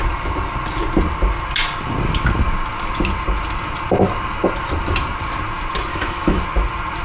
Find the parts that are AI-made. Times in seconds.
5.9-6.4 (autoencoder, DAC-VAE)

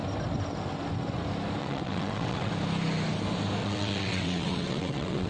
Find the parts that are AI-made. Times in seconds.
1.6-2.5 (vocoder, WaveNeXt); 3.6-5.3

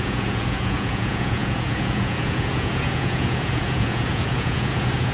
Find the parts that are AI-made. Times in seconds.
0.0-5.1 (vocoder, Vocos)

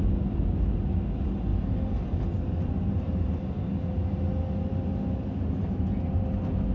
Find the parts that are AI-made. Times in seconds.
none

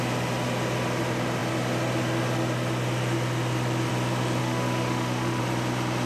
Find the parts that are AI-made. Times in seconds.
4.4-5.4 (autoencoder, DAC-VAE)